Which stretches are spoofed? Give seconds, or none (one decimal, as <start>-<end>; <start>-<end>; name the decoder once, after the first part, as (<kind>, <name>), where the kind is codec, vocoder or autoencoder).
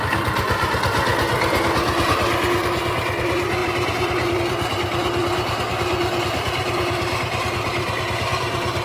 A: 3.6-4.4 (vocoder, BigVGAN v2)